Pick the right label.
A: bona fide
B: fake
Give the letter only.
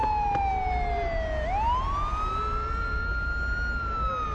A